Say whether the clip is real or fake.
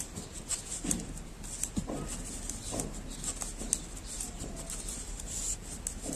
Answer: real